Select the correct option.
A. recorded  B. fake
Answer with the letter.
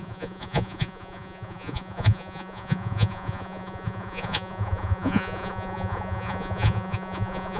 B